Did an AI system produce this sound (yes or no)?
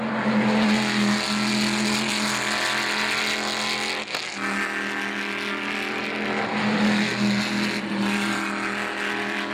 no